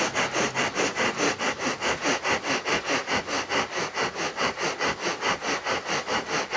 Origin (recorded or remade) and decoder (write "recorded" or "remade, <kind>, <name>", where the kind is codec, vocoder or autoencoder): recorded